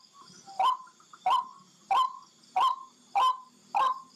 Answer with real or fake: real